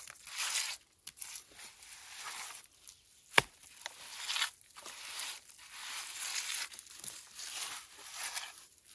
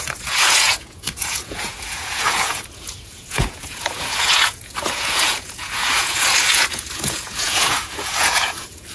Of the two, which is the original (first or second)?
first